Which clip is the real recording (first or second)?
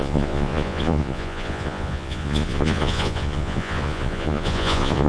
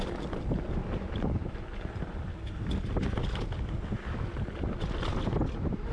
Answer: second